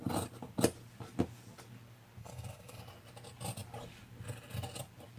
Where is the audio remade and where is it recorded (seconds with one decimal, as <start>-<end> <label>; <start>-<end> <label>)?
0.0-2.2 recorded; 2.2-2.8 remade; 2.8-5.2 recorded